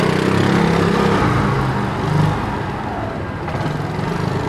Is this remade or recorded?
recorded